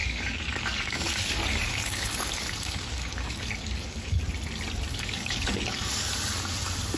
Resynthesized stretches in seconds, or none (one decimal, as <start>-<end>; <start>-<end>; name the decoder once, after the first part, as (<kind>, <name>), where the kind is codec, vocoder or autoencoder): 0.0-4.2 (codec, DAC); 4.9-6.1